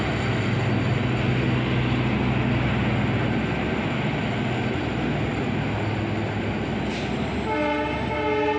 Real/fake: real